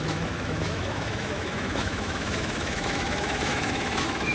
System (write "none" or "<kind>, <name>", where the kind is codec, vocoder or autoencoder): autoencoder, DAC-VAE